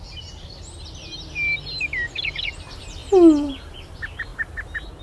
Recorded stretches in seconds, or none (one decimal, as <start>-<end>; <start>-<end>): 0.0-5.0